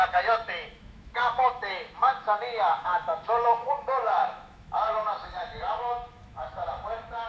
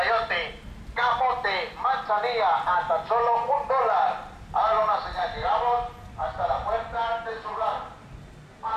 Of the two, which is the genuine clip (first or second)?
second